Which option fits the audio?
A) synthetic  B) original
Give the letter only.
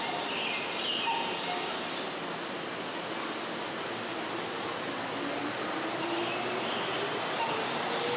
B